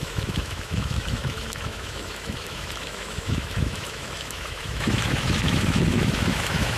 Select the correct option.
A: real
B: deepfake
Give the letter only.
B